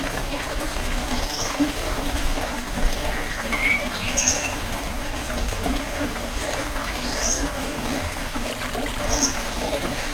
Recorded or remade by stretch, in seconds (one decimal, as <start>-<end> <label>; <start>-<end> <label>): 0.0-8.5 remade; 8.5-9.0 recorded; 9.0-10.1 remade